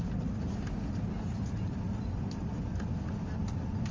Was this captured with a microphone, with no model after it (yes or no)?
yes